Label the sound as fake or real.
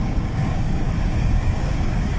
fake